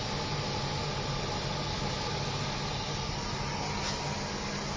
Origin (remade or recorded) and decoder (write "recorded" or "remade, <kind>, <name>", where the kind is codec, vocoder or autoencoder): recorded